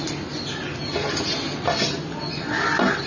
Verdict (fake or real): real